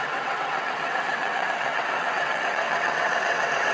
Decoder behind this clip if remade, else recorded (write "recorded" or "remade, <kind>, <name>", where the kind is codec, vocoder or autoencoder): remade, vocoder, WaveNeXt